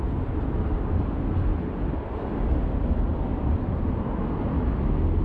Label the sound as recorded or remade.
recorded